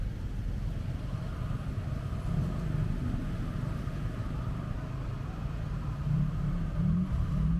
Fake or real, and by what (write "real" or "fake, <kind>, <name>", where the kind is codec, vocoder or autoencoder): real